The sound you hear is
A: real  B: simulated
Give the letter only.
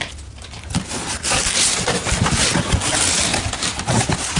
A